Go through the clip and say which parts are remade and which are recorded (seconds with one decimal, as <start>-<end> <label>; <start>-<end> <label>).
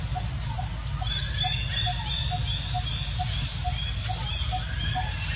0.0-5.4 recorded